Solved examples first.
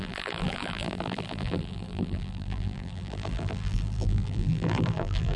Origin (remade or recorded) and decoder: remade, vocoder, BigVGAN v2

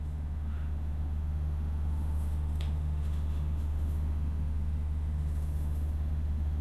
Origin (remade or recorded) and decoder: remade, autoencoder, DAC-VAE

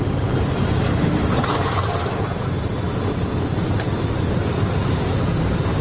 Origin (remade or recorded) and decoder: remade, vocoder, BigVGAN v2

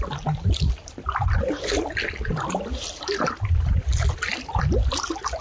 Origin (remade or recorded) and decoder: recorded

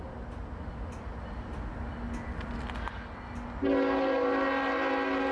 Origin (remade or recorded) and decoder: recorded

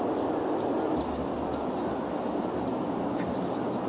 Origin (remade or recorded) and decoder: recorded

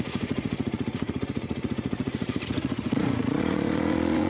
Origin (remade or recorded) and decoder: remade, vocoder, Vocos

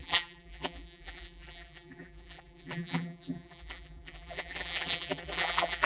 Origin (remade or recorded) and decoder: remade, vocoder, BigVGAN v2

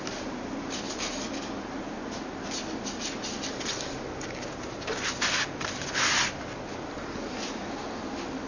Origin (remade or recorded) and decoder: recorded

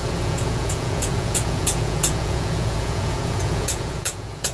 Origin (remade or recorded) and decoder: remade, vocoder, Vocos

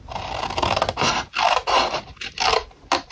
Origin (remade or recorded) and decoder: recorded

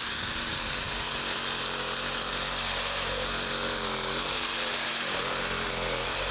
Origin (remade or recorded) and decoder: remade, vocoder, BigVGAN v2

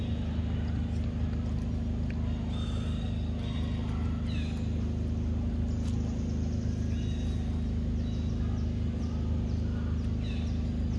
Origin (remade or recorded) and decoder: recorded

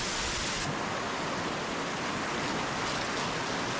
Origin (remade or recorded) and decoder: recorded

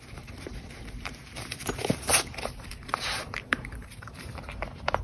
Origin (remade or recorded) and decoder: remade, vocoder, BigVGAN v2